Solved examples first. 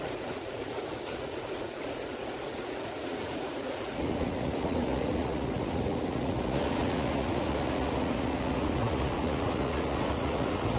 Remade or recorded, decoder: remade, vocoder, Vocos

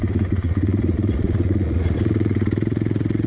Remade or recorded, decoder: remade, vocoder, Vocos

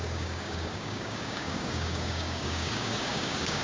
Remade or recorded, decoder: remade, codec, DAC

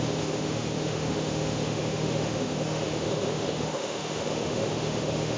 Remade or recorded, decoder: remade, autoencoder, DAC-VAE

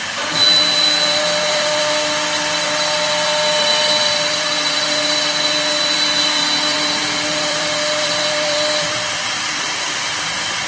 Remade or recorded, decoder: remade, vocoder, BigVGAN v2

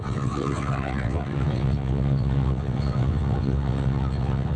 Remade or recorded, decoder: remade, vocoder, WaveNeXt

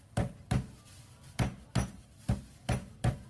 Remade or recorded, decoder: recorded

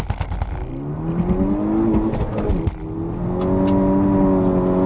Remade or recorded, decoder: recorded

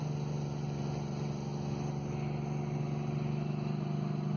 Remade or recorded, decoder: recorded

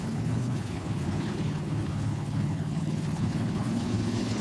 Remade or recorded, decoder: remade, codec, HILCodec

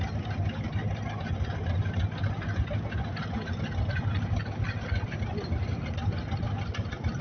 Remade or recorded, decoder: recorded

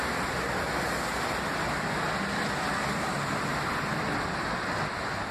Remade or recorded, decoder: recorded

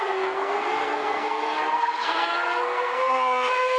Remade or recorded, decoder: remade, codec, SNAC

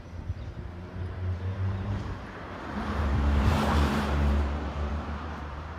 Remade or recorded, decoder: remade, vocoder, BigVGAN v2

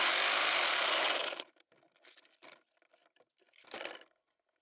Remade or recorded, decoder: recorded